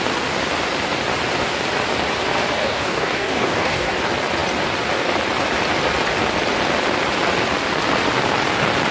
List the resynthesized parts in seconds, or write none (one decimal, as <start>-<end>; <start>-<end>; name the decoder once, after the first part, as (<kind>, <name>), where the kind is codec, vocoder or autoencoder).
2.6-3.9 (codec, DAC)